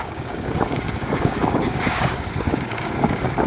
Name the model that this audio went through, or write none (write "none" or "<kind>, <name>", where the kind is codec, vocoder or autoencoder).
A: codec, DAC